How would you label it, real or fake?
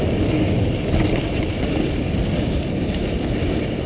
real